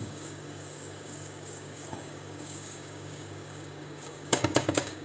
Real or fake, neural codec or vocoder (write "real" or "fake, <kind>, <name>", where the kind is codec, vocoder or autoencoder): fake, codec, DAC